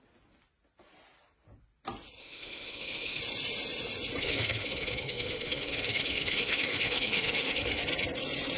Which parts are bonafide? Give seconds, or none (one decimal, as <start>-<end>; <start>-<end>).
0.0-2.2; 3.2-4.2; 7.8-8.6